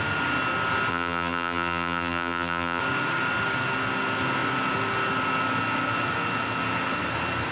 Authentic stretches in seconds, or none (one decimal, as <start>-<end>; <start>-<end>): 0.0-0.9; 2.8-7.5